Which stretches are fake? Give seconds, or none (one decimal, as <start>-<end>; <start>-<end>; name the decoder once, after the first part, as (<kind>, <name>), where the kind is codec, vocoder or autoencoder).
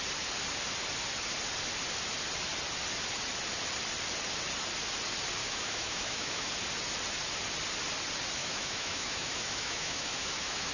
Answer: 5.4-6.5 (autoencoder, DAC-VAE); 8.4-10.7